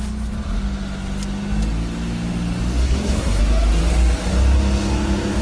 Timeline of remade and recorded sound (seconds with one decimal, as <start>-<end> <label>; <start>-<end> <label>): 0.0-2.8 recorded; 2.8-3.4 remade; 3.4-5.4 recorded